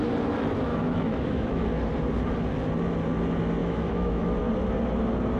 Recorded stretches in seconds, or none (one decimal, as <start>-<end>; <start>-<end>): 0.0-0.7; 1.6-3.6; 4.4-5.4